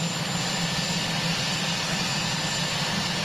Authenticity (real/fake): real